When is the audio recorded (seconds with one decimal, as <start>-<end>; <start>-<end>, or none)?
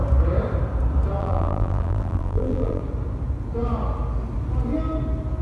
0.0-1.2; 2.8-5.4